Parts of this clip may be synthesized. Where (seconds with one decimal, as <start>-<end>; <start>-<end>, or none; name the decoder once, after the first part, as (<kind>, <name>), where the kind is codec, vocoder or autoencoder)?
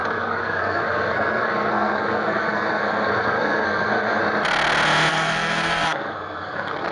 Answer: 0.0-4.2 (codec, SNAC); 5.1-6.9